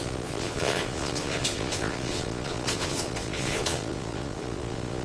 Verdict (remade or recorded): remade